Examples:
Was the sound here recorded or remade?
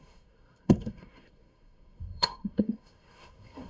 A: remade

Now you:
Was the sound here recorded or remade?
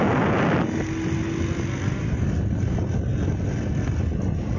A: recorded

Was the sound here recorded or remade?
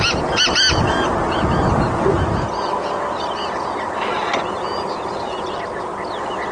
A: recorded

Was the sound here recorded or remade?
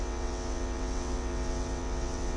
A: remade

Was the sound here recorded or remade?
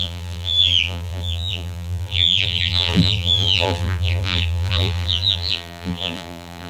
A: remade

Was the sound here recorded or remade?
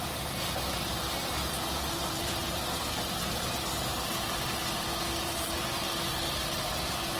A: recorded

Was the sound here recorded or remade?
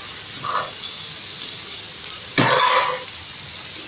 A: recorded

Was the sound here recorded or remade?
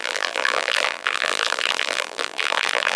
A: remade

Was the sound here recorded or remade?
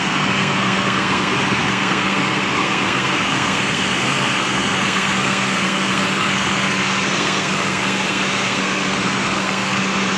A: remade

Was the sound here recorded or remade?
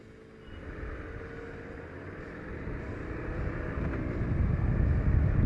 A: recorded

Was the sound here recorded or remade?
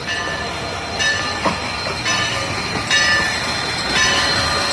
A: recorded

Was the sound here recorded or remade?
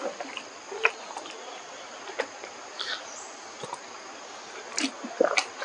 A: recorded